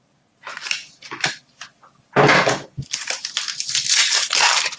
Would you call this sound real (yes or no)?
yes